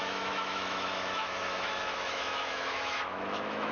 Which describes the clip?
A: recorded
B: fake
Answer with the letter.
B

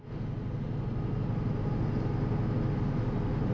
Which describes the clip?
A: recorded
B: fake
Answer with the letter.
A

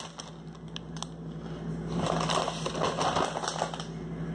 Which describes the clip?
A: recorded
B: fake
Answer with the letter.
A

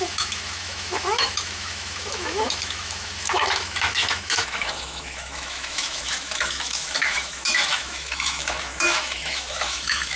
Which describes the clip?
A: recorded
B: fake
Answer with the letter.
B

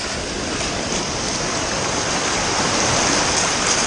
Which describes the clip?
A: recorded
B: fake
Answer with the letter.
A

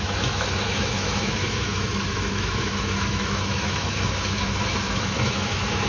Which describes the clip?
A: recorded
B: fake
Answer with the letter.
B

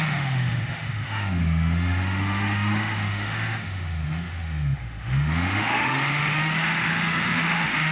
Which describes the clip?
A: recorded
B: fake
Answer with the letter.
B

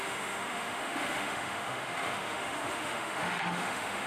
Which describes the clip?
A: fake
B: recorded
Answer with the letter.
A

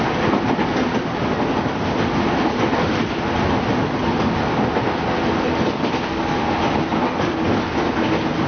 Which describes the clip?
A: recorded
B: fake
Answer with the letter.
A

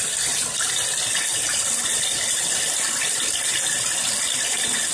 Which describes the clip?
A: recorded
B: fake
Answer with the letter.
A